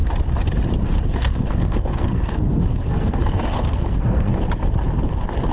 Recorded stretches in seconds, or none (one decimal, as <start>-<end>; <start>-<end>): 0.0-1.1; 4.4-5.5